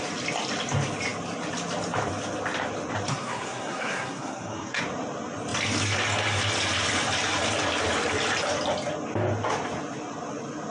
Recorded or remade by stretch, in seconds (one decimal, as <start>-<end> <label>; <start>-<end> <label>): 0.0-3.1 recorded; 3.1-4.8 remade; 4.8-10.7 recorded